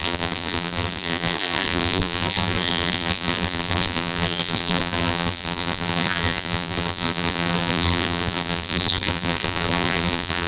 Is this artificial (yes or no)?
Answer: yes